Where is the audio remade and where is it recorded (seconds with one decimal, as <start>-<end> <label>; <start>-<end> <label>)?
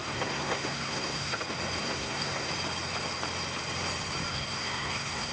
0.0-1.4 remade; 1.4-1.8 recorded; 1.8-2.5 remade; 2.5-4.3 recorded; 4.3-5.3 remade